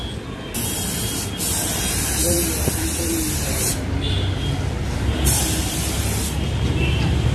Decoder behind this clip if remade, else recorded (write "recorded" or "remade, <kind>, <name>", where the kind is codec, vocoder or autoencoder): recorded